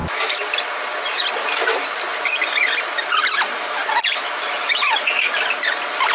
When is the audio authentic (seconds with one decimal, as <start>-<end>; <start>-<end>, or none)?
0.0-2.1